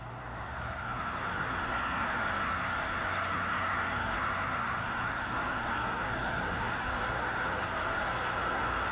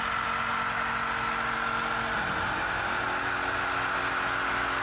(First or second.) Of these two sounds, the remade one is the first